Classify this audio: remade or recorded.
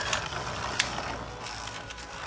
recorded